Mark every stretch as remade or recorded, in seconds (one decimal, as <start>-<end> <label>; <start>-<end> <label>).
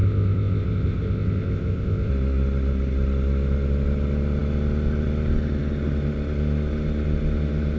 0.0-2.1 remade; 2.1-7.8 recorded